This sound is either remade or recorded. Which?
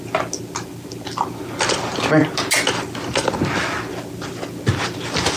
recorded